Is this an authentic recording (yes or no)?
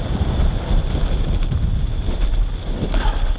yes